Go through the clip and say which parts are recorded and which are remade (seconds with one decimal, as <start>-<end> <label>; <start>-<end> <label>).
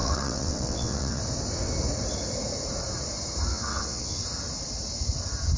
0.0-1.2 remade; 1.2-3.5 recorded; 3.5-4.2 remade; 4.2-5.6 recorded